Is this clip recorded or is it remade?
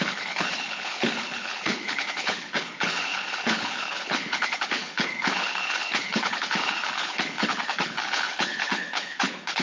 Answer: remade